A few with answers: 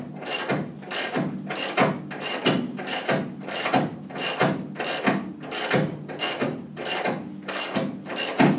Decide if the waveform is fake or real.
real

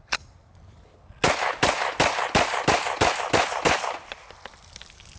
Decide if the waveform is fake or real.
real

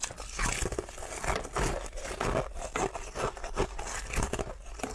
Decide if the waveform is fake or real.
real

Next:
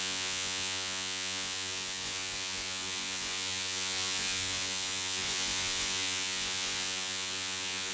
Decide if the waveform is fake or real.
fake